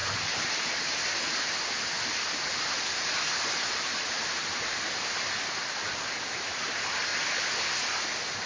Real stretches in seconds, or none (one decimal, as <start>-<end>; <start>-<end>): 0.0-8.5